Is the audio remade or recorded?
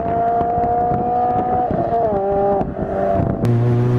recorded